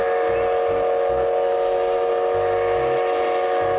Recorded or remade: recorded